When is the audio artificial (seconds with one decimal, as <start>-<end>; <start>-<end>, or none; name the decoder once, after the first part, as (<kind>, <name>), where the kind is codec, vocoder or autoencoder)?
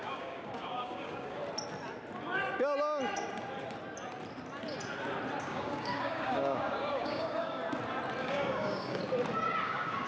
0.0-1.4 (codec, DAC); 5.4-7.6; 8.2-9.0; 9.6-10.1